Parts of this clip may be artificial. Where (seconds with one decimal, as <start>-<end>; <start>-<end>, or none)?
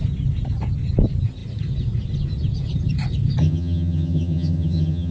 3.4-5.1